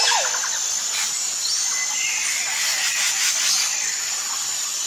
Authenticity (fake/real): real